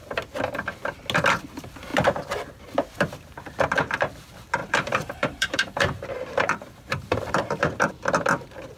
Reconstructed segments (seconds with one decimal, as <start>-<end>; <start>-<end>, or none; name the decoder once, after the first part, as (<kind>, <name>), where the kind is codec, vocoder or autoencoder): 4.6-7.9 (vocoder, BigVGAN v2)